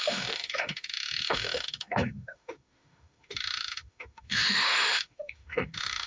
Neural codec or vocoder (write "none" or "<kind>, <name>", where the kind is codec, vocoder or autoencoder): autoencoder, DAC-VAE